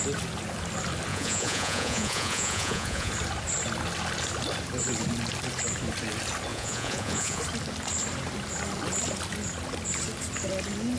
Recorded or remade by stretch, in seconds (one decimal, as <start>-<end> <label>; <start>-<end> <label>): 0.0-1.1 recorded; 1.1-3.1 remade; 3.1-6.5 recorded; 6.5-7.4 remade; 7.4-11.0 recorded

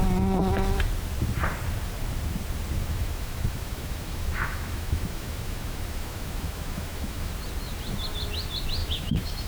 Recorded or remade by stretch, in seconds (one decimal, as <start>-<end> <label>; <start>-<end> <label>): 0.0-2.8 recorded; 2.8-7.3 remade; 7.3-8.8 recorded; 8.8-9.5 remade

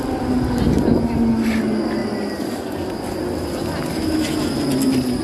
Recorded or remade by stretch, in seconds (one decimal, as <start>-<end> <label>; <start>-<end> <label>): 0.0-5.2 recorded

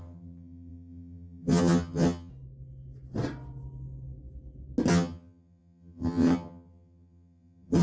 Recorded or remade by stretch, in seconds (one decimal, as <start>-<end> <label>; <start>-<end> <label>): 0.0-2.3 remade; 2.3-4.9 recorded; 4.9-7.8 remade

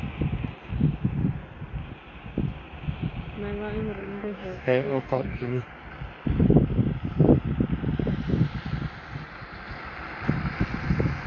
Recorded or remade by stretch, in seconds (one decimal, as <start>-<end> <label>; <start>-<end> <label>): 0.0-4.0 recorded; 4.0-5.6 remade; 5.6-11.3 recorded

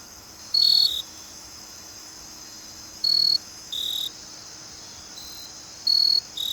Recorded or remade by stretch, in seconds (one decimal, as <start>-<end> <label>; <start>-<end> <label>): 0.0-3.9 remade; 3.9-6.5 recorded

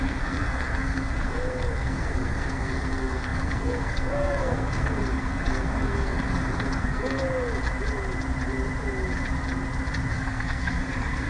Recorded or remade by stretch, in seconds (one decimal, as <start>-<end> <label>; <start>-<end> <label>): 0.0-7.2 remade; 7.2-10.1 recorded; 10.1-11.3 remade